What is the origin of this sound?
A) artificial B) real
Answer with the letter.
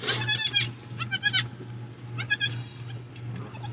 B